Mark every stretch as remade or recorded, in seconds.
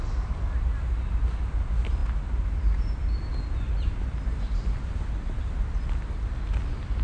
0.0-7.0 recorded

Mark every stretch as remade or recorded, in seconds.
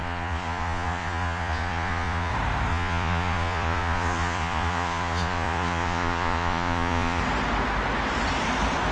0.0-2.3 remade; 2.3-2.7 recorded; 2.7-7.2 remade; 7.2-8.9 recorded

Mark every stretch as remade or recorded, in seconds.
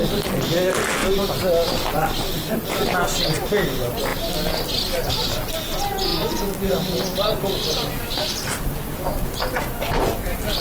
0.0-10.6 recorded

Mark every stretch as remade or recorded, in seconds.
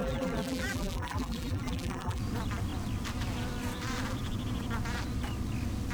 0.0-2.2 remade; 2.2-5.9 recorded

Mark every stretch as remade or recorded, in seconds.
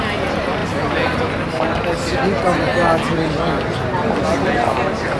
0.0-5.2 recorded